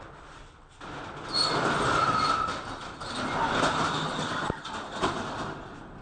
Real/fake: real